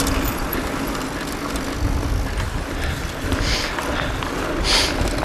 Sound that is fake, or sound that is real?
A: real